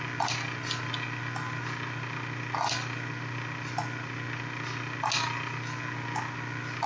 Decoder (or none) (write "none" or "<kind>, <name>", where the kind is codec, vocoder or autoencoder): none